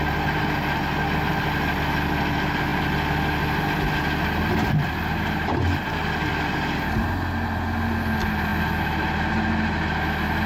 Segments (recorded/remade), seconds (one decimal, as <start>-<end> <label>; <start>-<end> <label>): 0.0-10.5 recorded